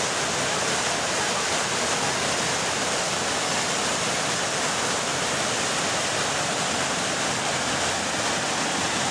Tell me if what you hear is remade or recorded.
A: recorded